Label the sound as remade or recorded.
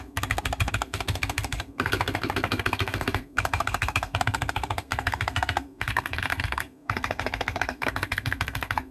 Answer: remade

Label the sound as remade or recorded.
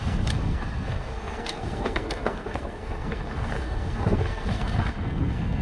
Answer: remade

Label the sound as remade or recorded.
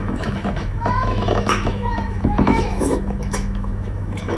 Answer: remade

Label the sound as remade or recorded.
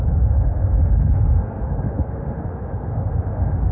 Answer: remade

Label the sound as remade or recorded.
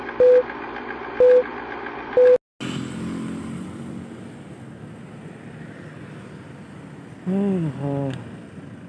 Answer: recorded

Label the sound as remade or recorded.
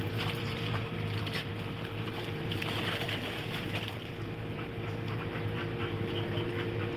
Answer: remade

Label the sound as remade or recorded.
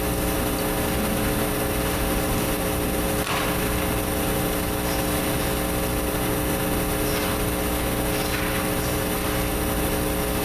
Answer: recorded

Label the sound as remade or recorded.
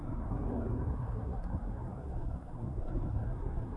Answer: remade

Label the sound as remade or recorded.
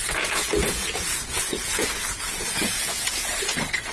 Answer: remade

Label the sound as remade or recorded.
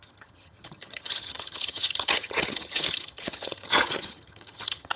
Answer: remade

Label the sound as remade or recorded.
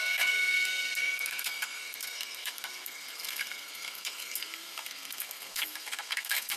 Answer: remade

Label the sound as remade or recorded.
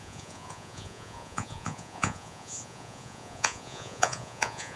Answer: remade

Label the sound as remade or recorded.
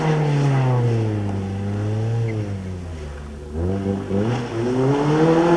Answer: recorded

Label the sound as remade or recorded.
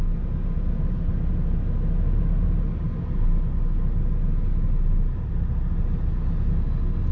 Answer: recorded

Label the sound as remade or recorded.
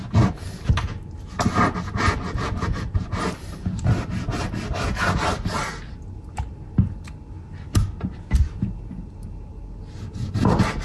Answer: recorded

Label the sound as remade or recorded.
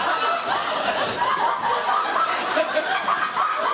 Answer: recorded